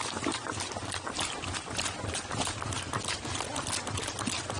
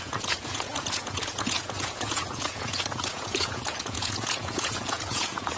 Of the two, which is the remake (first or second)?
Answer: second